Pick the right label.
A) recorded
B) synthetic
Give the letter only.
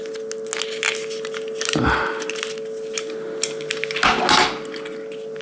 A